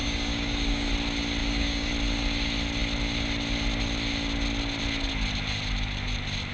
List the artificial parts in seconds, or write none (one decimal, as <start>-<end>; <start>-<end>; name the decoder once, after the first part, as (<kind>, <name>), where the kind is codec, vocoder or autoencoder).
0.0-0.9 (codec, DAC); 1.4-1.9